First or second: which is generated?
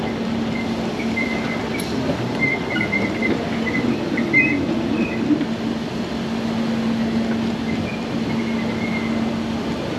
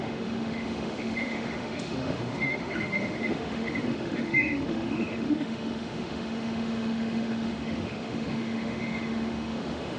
second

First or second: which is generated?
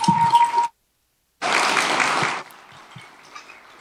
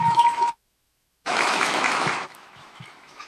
second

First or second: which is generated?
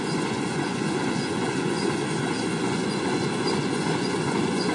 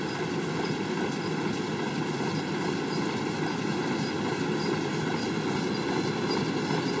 first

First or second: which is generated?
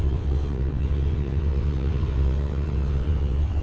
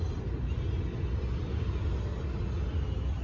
first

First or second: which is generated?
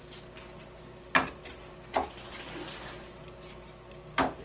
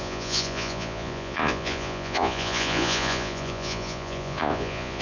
second